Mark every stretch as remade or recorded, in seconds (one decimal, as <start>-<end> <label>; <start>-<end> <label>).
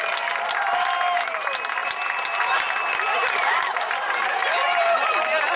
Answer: 0.0-5.6 recorded